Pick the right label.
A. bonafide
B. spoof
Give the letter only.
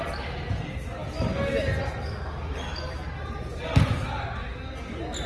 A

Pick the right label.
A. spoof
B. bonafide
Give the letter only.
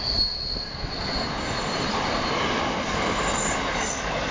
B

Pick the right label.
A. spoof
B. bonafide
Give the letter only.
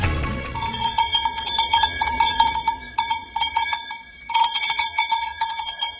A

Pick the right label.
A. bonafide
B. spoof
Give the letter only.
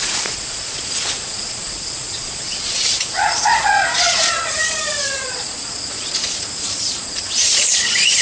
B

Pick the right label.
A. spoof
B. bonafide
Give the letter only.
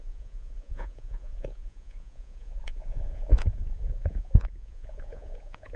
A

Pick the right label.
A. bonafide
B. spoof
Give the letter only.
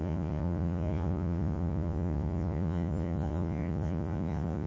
B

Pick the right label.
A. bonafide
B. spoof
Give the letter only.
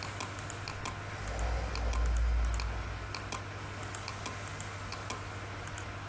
A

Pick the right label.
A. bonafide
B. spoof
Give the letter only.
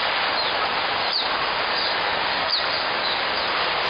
A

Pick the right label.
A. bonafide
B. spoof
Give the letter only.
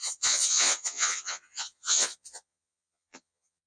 B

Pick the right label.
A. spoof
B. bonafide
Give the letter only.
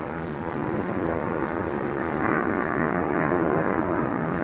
A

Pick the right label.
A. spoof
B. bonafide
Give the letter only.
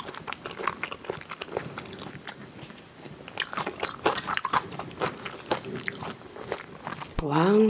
B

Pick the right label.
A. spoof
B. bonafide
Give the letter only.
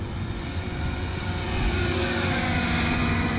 A